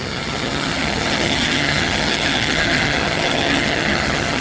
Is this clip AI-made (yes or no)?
yes